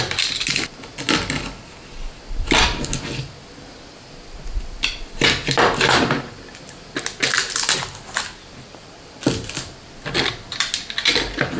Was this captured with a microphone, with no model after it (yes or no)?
yes